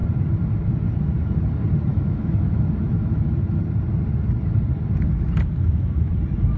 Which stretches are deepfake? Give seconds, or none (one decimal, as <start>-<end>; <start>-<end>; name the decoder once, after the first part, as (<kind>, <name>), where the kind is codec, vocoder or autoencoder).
1.9-3.6 (autoencoder, DAC-VAE); 5.6-6.1